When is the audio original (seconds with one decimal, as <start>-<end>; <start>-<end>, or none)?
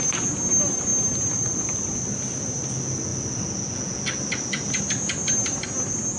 0.0-6.2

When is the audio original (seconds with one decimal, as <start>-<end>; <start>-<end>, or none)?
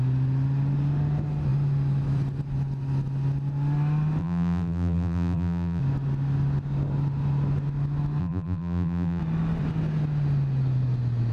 0.0-4.2; 5.8-8.2; 9.2-11.3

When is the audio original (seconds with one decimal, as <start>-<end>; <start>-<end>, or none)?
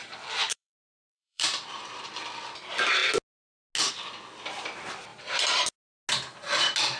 2.1-5.1; 5.6-7.0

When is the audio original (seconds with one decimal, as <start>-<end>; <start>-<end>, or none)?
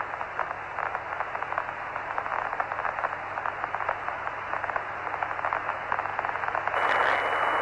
0.0-7.6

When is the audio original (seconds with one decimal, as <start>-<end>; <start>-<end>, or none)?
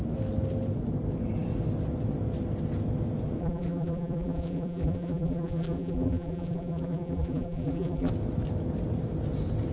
0.0-3.4; 8.1-9.7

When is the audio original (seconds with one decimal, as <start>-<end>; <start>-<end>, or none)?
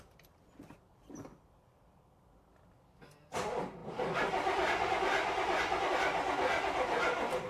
none